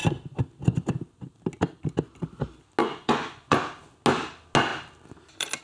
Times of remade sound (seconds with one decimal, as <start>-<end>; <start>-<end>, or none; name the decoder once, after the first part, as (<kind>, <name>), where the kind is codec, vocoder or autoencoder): 2.8-3.6 (vocoder, Vocos)